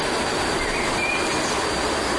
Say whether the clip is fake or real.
real